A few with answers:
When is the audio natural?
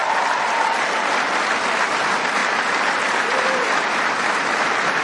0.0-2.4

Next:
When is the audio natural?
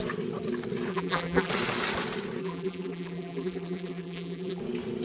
0.0-0.9; 1.5-2.4; 4.6-5.0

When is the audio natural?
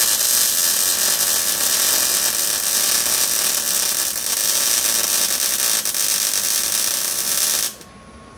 0.0-8.4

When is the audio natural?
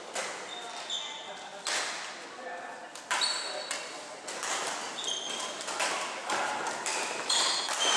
0.0-6.9; 7.5-8.0